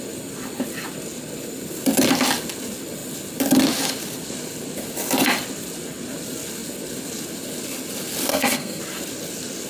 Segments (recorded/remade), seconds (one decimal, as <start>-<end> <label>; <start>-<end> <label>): 0.0-8.3 recorded; 8.3-8.8 remade; 8.8-9.7 recorded